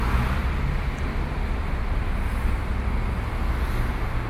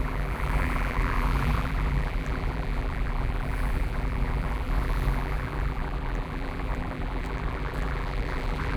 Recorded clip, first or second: first